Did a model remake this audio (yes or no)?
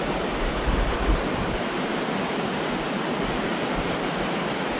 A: no